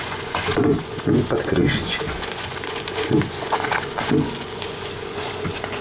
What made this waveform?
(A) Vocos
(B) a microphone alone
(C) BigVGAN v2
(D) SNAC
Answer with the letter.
A